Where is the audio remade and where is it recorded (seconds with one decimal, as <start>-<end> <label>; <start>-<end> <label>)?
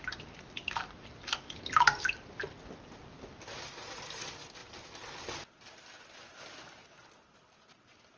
0.0-8.2 recorded